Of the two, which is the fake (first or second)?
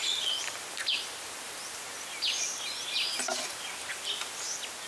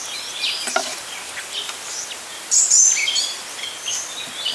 second